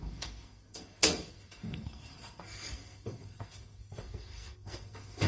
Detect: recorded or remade remade